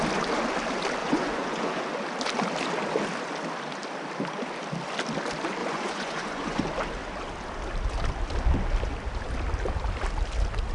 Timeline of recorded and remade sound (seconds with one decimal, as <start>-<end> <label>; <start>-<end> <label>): 0.0-1.0 recorded; 1.0-1.8 remade; 1.8-5.6 recorded; 5.6-6.6 remade; 6.6-10.7 recorded